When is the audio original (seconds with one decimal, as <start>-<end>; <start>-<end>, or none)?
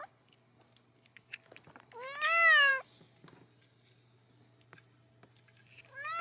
0.0-6.2